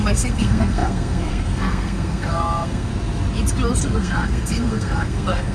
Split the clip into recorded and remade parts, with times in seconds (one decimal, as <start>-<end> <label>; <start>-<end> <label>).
0.0-2.9 remade; 2.9-3.8 recorded; 3.8-5.5 remade